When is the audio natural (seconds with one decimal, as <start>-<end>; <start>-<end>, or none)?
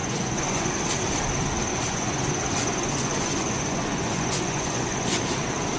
0.7-1.7; 5.2-5.8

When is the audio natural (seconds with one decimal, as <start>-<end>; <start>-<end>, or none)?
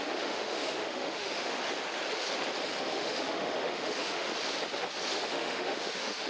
1.6-2.8; 4.3-5.1